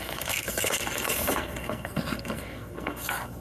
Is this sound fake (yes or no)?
yes